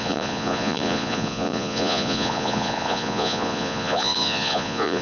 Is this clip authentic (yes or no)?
no